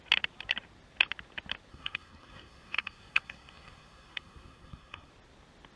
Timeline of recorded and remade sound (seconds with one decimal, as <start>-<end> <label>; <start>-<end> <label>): 0.0-1.7 recorded; 1.7-5.1 remade; 5.1-5.8 recorded